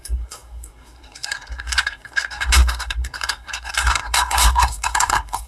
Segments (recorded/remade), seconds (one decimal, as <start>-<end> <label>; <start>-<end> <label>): 0.0-5.5 remade

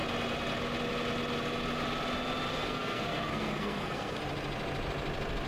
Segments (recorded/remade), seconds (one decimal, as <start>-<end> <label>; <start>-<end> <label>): 0.0-2.5 recorded; 2.5-4.2 remade; 4.2-5.5 recorded

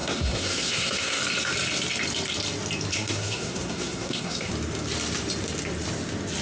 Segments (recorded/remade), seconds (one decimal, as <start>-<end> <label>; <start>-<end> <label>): 0.0-1.2 remade; 1.2-2.9 recorded; 2.9-4.5 remade; 4.5-6.4 recorded